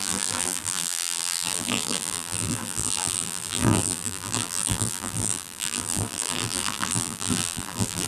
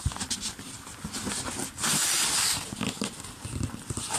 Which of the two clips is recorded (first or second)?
second